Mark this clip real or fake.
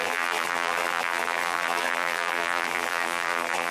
fake